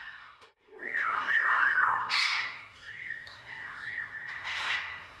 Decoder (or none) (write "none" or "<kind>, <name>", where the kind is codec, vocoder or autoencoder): codec, SNAC